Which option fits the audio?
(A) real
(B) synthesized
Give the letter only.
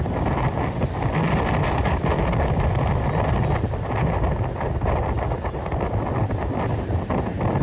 A